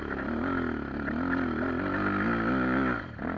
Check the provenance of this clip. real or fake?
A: real